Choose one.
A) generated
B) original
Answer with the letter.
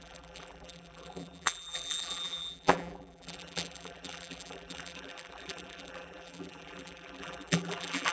A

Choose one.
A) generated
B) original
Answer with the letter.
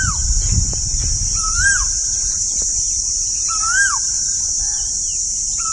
A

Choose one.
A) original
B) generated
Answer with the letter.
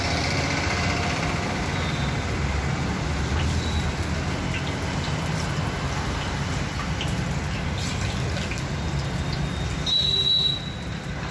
A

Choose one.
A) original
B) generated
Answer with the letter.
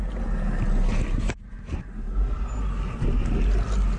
A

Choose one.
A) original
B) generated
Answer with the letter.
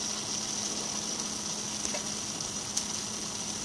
A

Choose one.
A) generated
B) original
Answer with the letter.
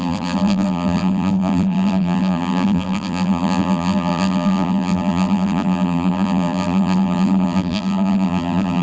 A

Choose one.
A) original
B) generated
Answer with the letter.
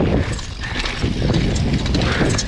A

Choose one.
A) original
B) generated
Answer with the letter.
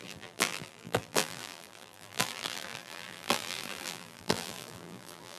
B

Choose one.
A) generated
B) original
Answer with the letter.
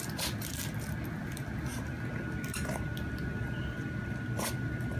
B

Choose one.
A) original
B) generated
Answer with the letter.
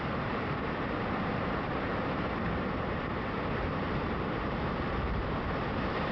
B